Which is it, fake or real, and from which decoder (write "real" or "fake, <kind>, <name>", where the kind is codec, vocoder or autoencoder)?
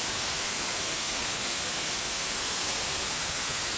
fake, codec, SNAC